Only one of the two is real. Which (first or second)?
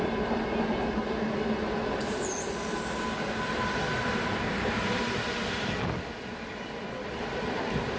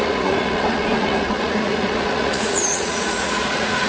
first